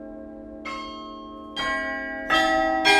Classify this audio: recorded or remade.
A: recorded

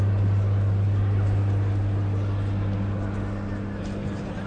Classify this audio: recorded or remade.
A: recorded